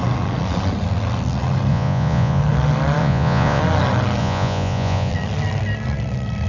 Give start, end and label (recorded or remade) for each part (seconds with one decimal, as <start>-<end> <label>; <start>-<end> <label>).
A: 0.0-1.7 recorded; 1.7-2.4 remade; 2.4-3.0 recorded; 3.0-3.6 remade; 3.6-4.2 recorded; 4.2-5.1 remade; 5.1-6.5 recorded